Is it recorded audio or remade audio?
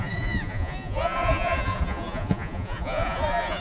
remade